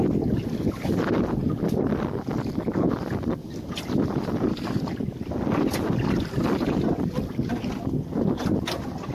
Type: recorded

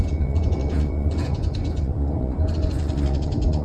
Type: remade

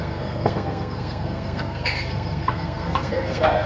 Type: remade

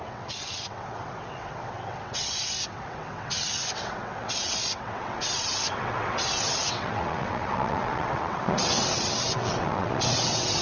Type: remade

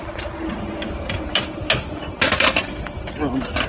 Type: recorded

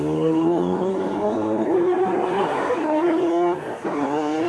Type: remade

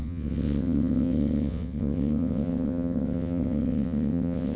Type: remade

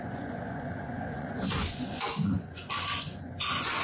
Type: remade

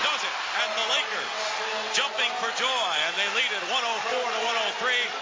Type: recorded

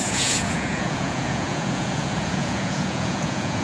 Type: remade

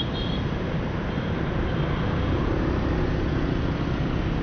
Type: recorded